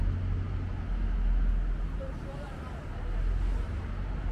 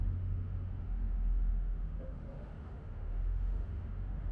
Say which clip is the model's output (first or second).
second